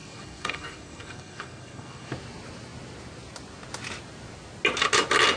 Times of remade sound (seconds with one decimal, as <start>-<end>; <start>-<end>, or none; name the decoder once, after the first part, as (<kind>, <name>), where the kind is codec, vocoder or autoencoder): 0.0-2.1 (codec, SNAC)